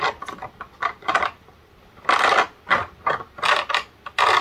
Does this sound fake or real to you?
real